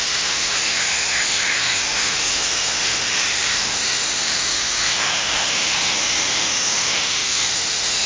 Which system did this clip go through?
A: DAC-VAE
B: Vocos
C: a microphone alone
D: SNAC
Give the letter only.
A